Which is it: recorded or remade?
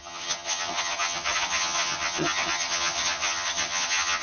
remade